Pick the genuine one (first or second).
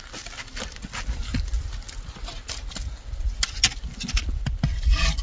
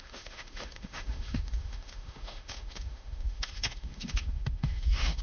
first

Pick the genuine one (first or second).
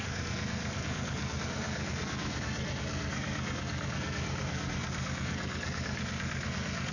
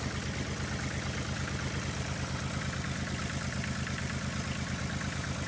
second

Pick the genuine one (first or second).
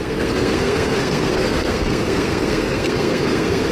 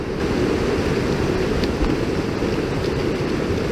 second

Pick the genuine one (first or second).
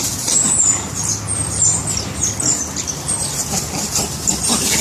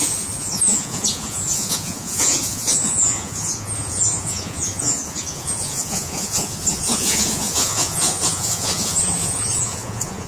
first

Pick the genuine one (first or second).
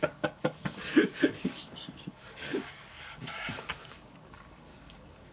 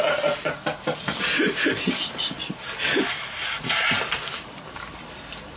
second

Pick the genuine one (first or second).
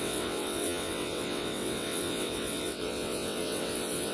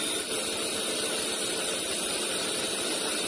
second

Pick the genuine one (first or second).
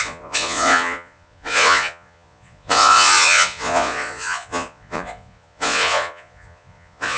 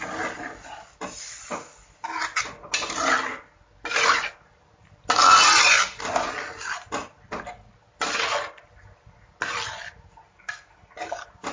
second